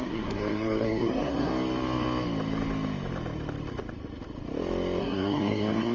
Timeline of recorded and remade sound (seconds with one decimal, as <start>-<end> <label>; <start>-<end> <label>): 0.0-1.5 remade; 1.5-5.0 recorded; 5.0-5.9 remade